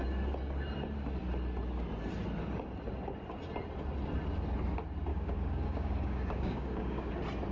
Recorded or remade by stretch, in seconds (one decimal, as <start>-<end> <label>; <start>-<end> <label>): 0.0-5.1 recorded; 5.1-7.1 remade; 7.1-7.5 recorded